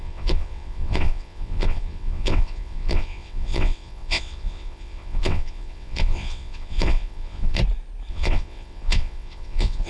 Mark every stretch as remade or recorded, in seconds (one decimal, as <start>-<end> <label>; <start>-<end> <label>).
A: 0.0-7.6 remade; 7.6-8.1 recorded; 8.1-9.9 remade